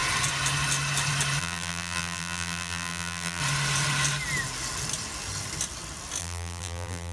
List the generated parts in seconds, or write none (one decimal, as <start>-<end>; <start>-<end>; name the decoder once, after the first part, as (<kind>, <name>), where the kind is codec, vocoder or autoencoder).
1.4-3.4 (vocoder, BigVGAN v2); 6.2-7.1